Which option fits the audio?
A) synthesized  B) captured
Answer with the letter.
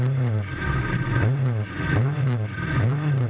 A